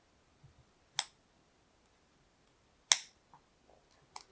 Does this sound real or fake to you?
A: real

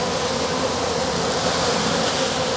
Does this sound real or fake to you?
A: real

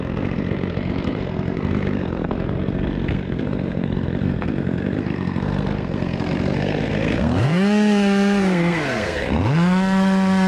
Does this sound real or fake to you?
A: fake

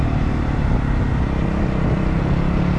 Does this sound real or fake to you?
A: real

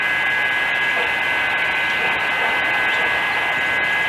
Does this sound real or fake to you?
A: real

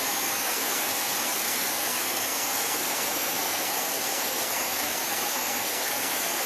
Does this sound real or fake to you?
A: fake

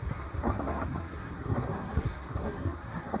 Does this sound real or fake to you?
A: fake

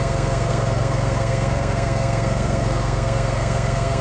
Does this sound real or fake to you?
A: fake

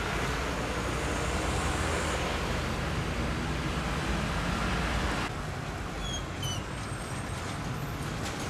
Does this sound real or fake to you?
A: real